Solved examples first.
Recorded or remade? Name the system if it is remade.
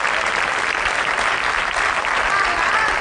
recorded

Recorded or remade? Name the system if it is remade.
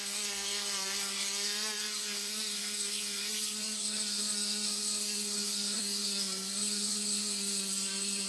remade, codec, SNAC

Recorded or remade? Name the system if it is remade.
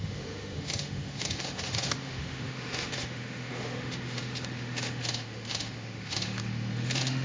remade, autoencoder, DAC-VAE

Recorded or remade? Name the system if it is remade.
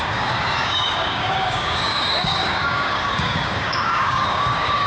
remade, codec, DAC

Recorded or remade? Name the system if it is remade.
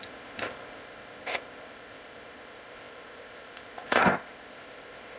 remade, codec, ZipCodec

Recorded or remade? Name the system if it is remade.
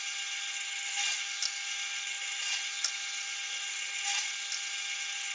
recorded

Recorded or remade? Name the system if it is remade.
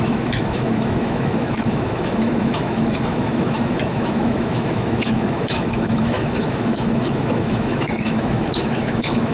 remade, autoencoder, DAC-VAE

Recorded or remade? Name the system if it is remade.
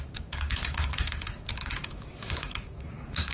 remade, codec, DAC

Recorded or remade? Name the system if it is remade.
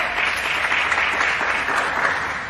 recorded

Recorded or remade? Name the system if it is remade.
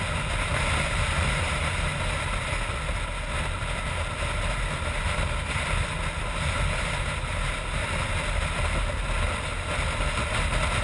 recorded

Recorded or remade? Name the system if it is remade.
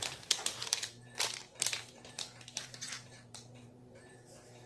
remade, vocoder, BigVGAN v2